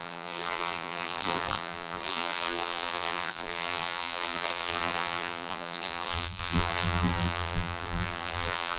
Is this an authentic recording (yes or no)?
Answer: no